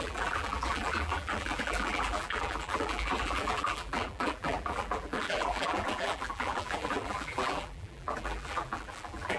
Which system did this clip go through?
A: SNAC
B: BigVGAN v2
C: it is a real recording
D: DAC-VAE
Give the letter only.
B